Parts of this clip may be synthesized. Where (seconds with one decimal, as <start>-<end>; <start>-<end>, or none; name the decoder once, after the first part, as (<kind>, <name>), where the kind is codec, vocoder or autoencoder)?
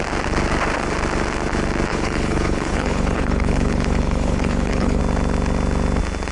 1.9-5.0 (codec, HILCodec)